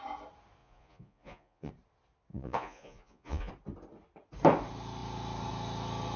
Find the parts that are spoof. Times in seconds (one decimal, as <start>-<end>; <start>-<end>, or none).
0.6-1.7; 2.3-3.5